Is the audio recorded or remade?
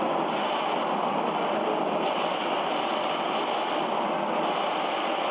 recorded